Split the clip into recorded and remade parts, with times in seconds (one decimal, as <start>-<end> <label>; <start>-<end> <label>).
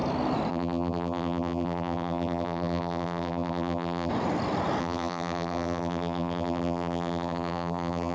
0.0-0.5 recorded; 0.5-4.1 remade; 4.1-4.8 recorded; 4.8-8.1 remade